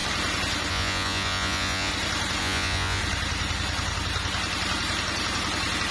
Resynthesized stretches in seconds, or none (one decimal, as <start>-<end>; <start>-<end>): 0.7-1.9; 2.4-3.0